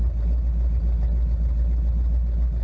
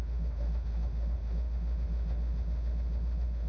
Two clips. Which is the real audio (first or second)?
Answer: first